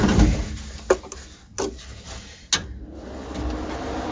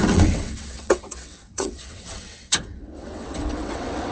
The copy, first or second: second